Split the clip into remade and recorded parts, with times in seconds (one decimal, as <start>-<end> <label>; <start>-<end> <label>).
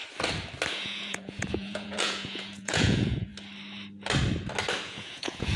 0.0-0.7 recorded; 0.7-3.3 remade; 3.3-4.8 recorded; 4.8-5.6 remade